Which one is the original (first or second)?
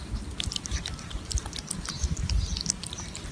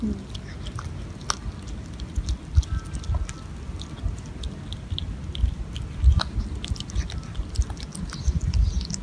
second